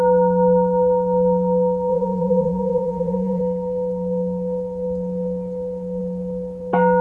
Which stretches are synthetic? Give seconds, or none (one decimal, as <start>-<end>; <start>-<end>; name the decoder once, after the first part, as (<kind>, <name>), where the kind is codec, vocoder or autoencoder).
1.9-3.4 (vocoder, Vocos)